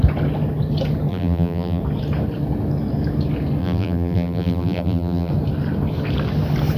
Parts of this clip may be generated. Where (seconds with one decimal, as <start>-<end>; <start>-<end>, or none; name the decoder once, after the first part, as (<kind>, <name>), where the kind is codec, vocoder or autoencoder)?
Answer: 1.1-1.8 (vocoder, BigVGAN v2); 3.6-5.3